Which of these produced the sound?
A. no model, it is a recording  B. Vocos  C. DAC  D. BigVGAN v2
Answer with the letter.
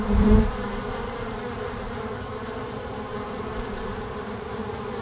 D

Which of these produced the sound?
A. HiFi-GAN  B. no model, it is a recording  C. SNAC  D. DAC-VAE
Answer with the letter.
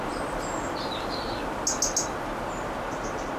B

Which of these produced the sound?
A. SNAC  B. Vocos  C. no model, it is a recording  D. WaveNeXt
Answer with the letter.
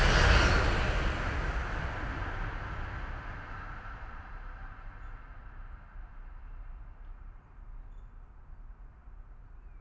C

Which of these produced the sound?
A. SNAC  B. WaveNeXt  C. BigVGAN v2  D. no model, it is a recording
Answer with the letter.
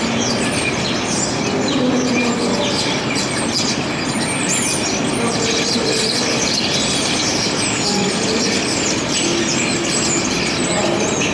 D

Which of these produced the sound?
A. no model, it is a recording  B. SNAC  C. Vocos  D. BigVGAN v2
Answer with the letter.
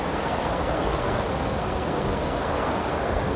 B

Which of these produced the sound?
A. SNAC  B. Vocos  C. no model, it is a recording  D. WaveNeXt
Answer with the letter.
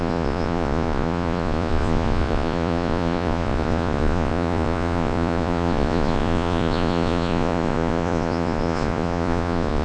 B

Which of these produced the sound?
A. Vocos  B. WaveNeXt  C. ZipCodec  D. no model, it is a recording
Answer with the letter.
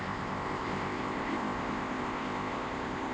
C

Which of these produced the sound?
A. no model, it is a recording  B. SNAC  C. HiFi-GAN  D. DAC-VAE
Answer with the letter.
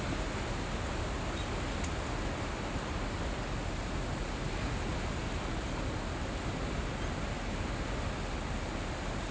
A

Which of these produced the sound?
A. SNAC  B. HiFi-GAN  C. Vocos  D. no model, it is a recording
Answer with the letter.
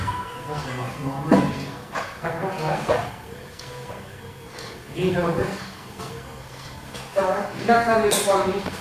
A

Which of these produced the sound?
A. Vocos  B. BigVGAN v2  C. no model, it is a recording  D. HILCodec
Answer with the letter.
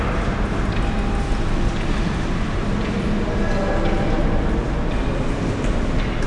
C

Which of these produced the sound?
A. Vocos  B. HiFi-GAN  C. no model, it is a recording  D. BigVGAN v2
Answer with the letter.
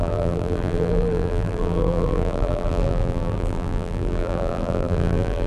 D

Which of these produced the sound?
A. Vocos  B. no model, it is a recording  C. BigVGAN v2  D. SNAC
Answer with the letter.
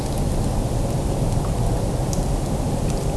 B